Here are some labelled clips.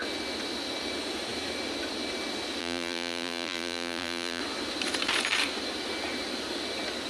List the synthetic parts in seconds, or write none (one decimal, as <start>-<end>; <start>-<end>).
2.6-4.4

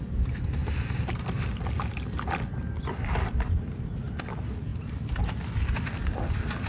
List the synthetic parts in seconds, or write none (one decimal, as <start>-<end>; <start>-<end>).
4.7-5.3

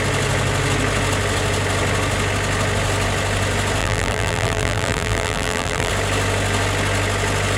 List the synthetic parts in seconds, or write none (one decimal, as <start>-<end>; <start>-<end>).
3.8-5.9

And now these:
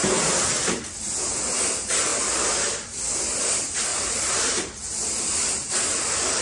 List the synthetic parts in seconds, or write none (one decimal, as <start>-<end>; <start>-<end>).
3.9-6.4

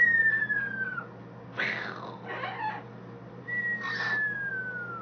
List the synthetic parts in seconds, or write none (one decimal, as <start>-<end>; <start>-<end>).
none

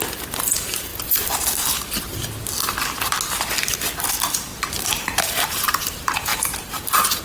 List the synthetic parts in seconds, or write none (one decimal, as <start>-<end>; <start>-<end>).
0.0-0.9; 4.1-4.5; 5.2-7.2

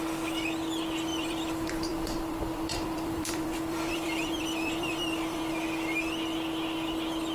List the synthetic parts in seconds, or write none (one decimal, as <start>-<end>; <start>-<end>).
1.1-5.5